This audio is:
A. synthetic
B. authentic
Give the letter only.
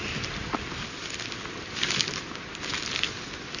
B